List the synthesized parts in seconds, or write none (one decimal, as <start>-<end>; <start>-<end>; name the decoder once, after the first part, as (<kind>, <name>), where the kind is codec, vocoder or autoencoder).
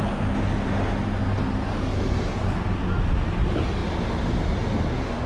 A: none